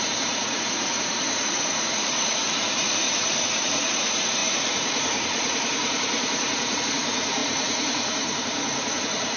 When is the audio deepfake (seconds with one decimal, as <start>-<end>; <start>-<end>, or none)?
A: 0.0-9.4